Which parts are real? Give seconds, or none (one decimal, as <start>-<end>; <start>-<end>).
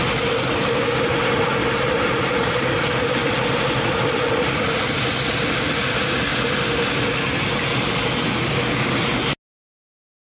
0.0-10.2